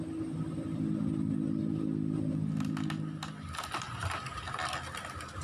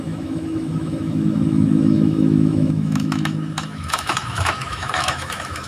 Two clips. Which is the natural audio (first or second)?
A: first